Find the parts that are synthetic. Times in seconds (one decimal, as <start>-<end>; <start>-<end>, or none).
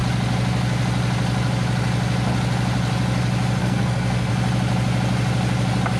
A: 3.6-4.3